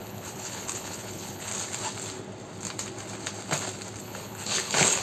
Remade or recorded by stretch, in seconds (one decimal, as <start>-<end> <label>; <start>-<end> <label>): 0.0-1.5 remade; 1.5-4.0 recorded; 4.0-5.0 remade